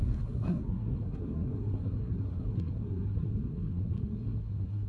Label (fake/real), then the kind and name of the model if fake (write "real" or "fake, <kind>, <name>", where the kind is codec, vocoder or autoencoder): fake, codec, SNAC